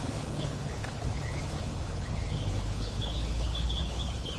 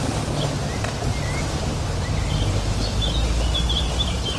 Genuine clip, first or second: second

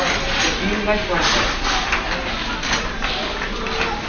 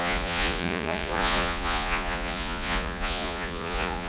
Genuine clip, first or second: first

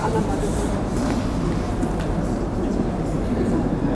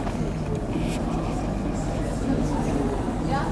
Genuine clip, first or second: second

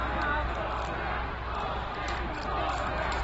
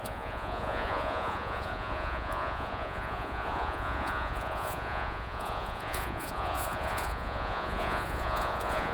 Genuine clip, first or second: first